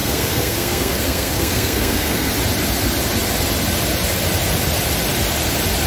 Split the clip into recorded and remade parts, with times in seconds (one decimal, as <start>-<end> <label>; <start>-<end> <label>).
0.0-2.3 remade; 2.3-5.9 recorded